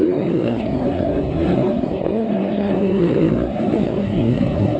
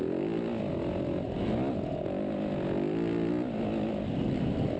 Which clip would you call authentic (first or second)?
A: second